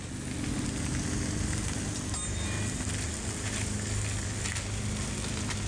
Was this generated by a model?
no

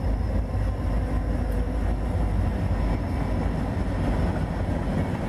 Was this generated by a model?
no